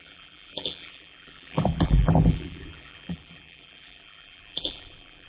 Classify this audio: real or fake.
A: fake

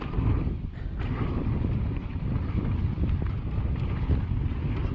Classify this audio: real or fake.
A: real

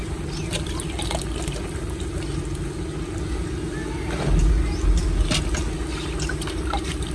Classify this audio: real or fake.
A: real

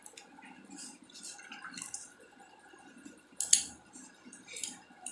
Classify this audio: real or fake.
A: real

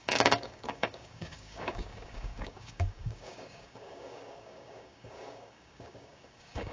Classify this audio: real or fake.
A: fake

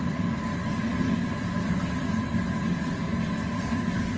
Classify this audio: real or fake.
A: real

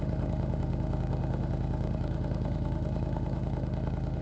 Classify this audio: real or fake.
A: fake